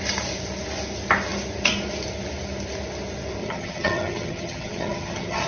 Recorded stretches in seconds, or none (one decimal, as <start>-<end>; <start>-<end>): 0.0-3.4